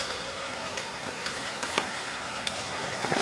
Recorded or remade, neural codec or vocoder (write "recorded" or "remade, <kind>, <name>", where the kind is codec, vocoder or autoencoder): remade, codec, SNAC